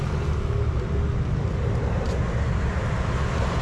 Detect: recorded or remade recorded